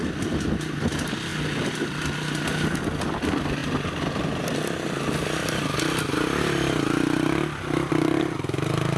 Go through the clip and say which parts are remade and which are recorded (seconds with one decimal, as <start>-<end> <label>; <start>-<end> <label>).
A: 0.0-9.0 recorded